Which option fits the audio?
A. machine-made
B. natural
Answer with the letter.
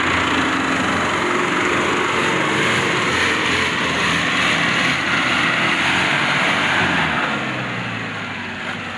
B